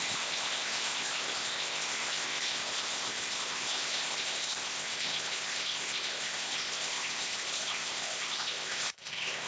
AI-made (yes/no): yes